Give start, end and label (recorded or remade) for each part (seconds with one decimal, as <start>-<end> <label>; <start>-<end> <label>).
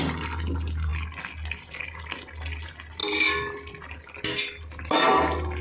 0.0-5.6 recorded